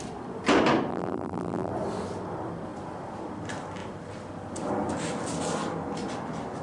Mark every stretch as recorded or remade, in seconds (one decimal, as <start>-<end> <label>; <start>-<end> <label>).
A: 0.0-0.9 recorded; 0.9-1.7 remade; 1.7-6.6 recorded